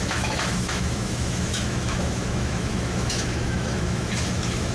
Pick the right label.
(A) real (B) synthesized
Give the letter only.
B